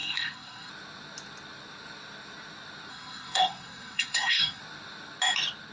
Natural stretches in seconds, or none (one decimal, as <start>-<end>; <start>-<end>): 0.7-2.9; 4.6-5.7

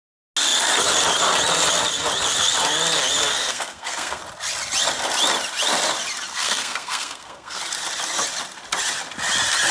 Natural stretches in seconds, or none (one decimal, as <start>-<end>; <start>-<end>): 0.0-3.3; 4.2-6.3; 7.6-9.7